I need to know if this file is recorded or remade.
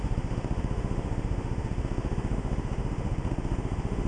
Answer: remade